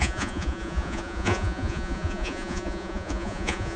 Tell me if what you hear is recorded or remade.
remade